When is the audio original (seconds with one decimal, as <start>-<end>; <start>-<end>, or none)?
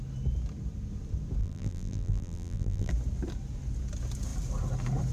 0.0-1.4; 2.9-5.1